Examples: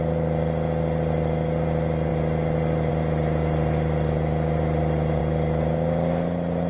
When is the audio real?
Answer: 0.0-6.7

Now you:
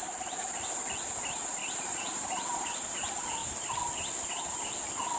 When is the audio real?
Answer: 0.0-1.6; 2.9-3.4; 3.9-5.2